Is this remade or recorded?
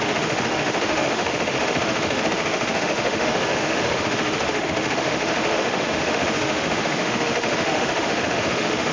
remade